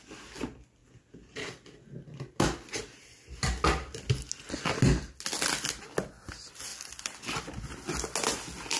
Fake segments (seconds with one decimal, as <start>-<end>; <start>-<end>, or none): none